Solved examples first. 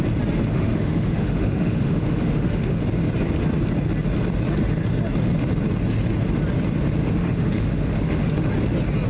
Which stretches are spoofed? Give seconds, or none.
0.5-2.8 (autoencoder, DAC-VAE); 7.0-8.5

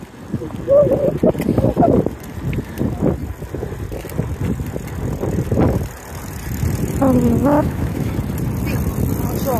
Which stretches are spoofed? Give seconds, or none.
7.4-8.1 (autoencoder, DAC-VAE)

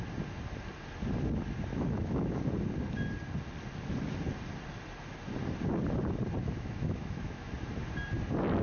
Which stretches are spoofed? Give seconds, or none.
1.7-2.4 (autoencoder, DAC-VAE); 6.4-7.5

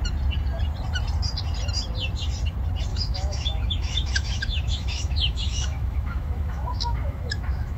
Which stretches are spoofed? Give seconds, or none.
2.9-7.8 (autoencoder, DAC-VAE)